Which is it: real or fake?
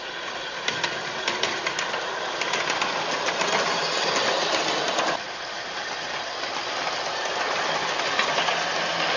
real